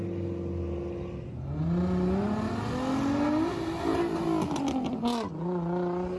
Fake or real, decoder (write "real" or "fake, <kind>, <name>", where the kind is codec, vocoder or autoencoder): real